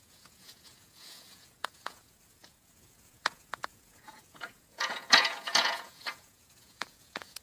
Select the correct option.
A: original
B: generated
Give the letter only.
B